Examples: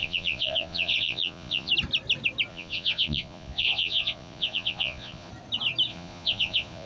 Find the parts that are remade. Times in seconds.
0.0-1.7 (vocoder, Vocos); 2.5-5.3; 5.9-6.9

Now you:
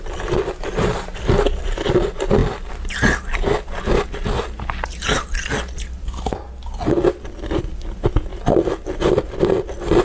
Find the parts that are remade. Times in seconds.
none